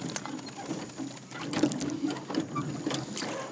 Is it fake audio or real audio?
real